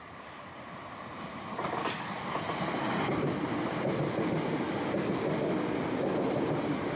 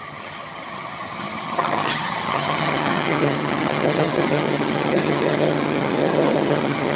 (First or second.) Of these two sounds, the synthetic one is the second